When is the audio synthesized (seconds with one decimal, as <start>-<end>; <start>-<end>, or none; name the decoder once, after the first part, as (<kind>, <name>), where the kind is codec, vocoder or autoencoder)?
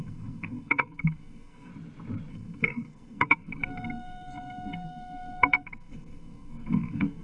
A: 0.0-1.7 (codec, SNAC); 2.3-7.2